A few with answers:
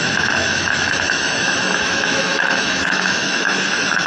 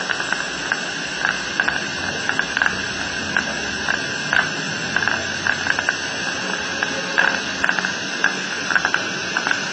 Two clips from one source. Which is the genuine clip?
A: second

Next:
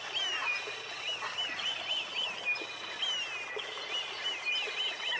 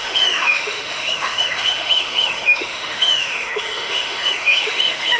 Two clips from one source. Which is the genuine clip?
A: first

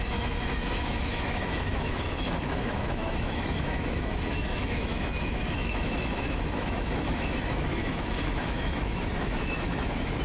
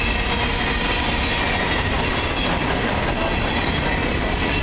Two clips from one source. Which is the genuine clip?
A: second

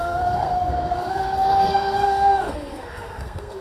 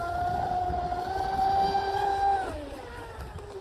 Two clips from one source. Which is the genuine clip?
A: second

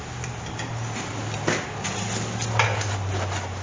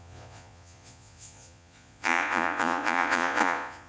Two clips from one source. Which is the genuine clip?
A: first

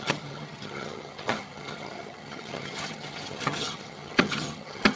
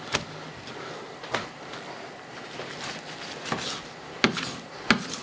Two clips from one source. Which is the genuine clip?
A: second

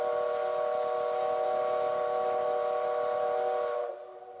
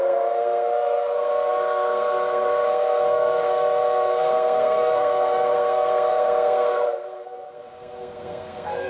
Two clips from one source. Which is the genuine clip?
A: first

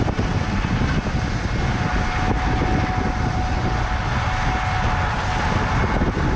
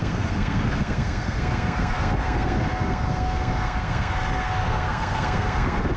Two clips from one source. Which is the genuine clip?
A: first